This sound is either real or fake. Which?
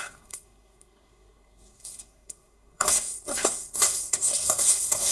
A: fake